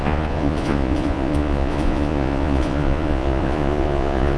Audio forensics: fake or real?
fake